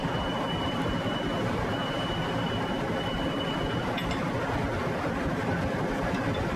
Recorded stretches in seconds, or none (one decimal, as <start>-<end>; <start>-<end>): 3.9-4.8; 5.5-6.6

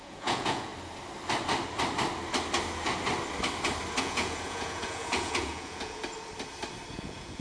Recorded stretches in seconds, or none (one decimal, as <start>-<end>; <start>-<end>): 0.7-4.0; 6.0-6.9

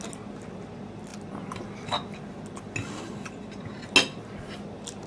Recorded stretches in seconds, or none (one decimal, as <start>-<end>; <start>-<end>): 0.0-5.1

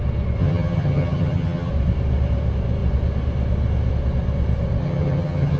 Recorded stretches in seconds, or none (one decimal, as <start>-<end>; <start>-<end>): 0.0-0.4; 1.7-4.8

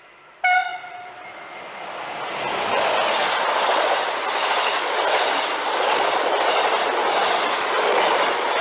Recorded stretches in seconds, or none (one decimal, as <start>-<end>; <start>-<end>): 0.0-8.6